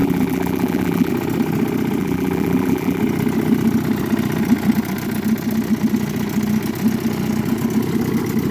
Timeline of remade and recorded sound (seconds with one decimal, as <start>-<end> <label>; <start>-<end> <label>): 0.0-1.1 remade; 1.1-2.0 recorded; 2.0-3.0 remade; 3.0-8.5 recorded